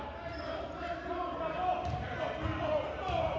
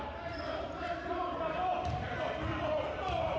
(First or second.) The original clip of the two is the first